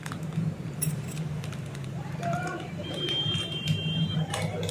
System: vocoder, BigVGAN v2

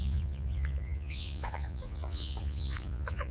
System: vocoder, Vocos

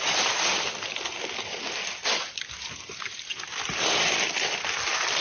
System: none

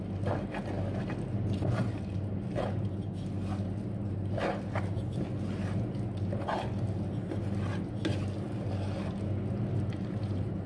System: none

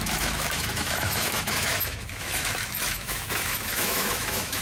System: autoencoder, DAC-VAE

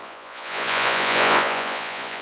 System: vocoder, Vocos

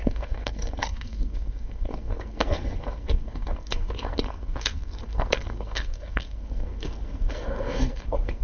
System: codec, SNAC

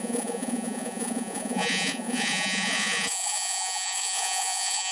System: vocoder, Vocos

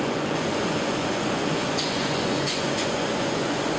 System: vocoder, Vocos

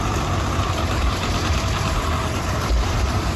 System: vocoder, BigVGAN v2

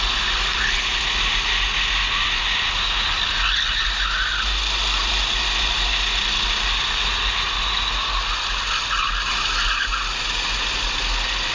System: none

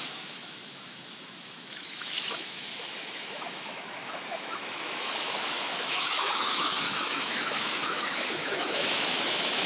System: autoencoder, DAC-VAE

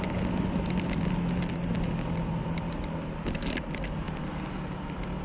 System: none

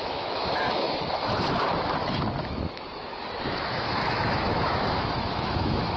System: autoencoder, DAC-VAE